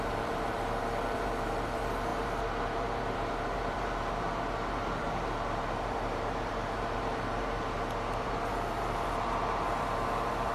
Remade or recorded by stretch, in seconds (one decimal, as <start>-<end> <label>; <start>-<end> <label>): 0.0-10.5 remade